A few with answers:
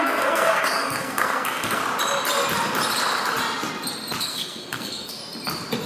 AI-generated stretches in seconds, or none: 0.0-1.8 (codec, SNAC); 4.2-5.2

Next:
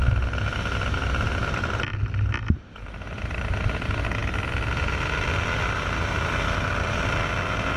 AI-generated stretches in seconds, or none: none

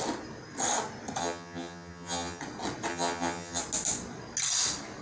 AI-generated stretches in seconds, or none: 1.2-2.4 (vocoder, HiFi-GAN); 2.9-3.6

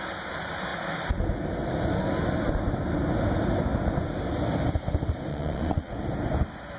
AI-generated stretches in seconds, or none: 5.3-5.9 (vocoder, Vocos)

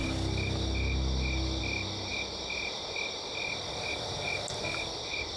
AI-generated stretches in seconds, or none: none

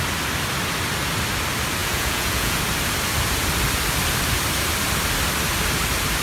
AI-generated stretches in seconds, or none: 1.8-2.6 (vocoder, Vocos)

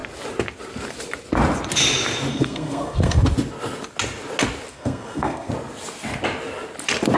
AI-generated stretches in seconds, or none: 2.3-3.2 (codec, SNAC); 4.7-5.5